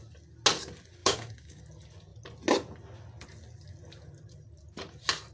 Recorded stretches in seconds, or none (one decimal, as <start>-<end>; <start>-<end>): 0.0-1.0; 1.6-5.3